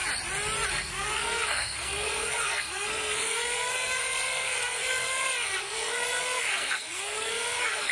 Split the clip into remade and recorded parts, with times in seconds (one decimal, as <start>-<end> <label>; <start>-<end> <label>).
0.0-0.7 recorded; 0.7-7.9 remade